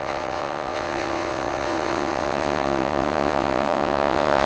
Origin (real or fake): fake